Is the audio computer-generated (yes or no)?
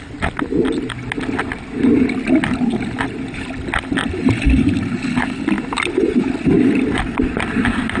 no